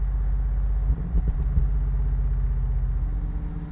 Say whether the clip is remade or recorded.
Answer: recorded